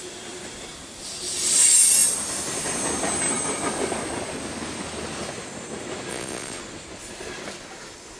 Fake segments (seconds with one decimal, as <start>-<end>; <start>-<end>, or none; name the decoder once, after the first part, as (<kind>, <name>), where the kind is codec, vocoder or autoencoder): 6.1-6.6 (vocoder, Vocos)